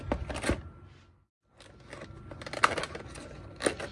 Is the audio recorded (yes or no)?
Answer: yes